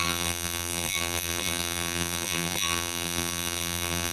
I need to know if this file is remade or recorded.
remade